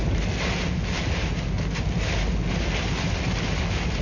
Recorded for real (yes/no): yes